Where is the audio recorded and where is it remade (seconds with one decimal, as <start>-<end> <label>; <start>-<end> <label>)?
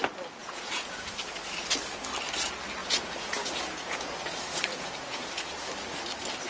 0.0-0.4 recorded; 0.4-1.1 remade; 1.1-2.8 recorded; 2.8-4.1 remade; 4.1-4.7 recorded; 4.7-5.7 remade; 5.7-6.5 recorded